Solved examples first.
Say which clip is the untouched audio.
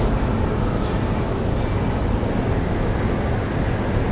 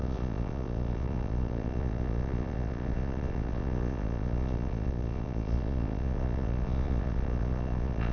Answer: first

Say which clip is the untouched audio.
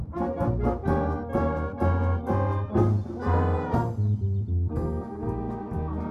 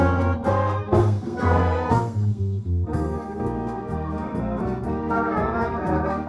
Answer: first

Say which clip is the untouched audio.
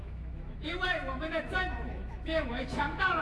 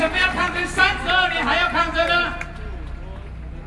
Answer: second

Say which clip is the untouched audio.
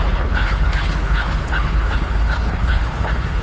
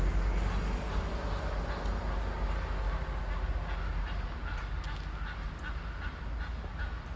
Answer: second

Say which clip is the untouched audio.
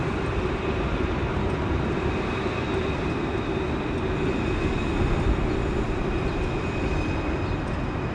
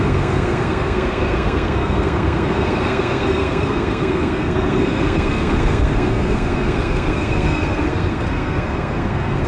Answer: first